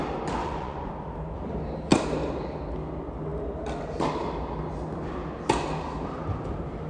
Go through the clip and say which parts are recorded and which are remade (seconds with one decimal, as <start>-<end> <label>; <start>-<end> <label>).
0.0-0.4 recorded; 0.4-0.9 remade; 0.9-6.9 recorded